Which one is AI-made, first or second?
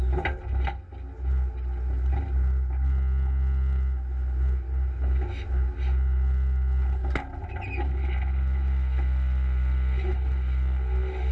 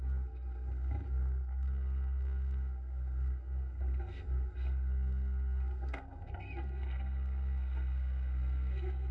second